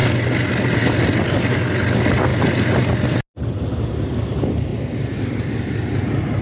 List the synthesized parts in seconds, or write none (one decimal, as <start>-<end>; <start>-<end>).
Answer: 4.7-5.4

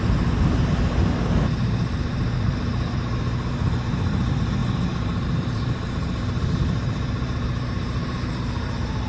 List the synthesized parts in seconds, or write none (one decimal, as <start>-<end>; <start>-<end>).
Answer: 4.6-9.1

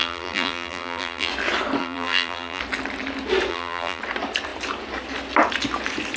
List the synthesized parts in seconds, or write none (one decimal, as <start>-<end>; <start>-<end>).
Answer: 0.0-1.3; 1.8-2.6; 3.5-4.0

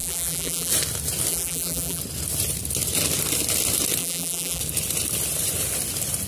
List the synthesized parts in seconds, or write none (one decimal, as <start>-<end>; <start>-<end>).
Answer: 0.0-0.7; 1.3-2.0; 4.0-4.6

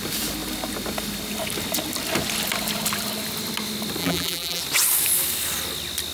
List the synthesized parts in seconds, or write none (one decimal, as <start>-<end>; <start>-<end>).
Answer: 4.0-4.6

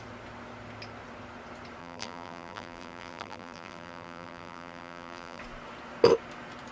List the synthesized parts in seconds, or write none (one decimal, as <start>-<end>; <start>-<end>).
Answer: 1.8-5.4